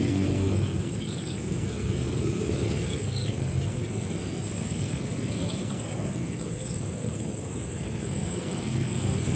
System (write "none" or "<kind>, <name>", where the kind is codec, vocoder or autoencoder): codec, SNAC